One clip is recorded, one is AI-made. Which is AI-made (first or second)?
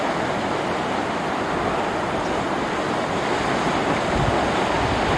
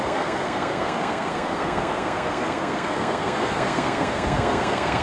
second